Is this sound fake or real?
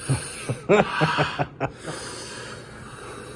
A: real